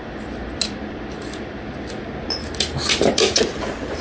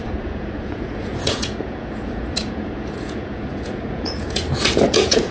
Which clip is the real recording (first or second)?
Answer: first